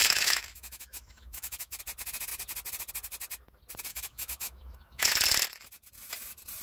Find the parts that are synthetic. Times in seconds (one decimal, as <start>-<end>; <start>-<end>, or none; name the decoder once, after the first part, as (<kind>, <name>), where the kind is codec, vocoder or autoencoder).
0.0-1.8 (autoencoder, DAC-VAE); 3.9-5.1